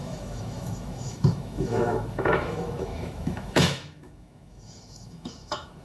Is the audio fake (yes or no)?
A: yes